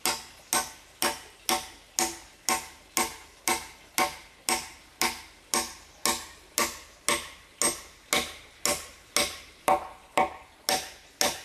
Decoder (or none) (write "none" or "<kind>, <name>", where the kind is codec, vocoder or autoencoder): none